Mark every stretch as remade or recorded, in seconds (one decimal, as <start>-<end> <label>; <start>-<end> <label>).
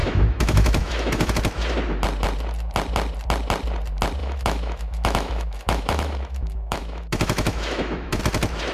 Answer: 0.0-1.3 remade; 1.3-4.2 recorded; 4.2-8.2 remade; 8.2-8.7 recorded